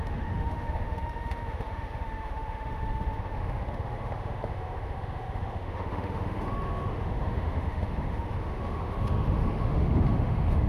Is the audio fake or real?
fake